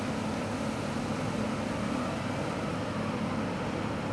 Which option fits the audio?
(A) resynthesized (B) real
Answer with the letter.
B